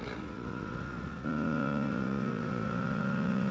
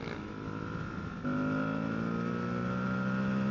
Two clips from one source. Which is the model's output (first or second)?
first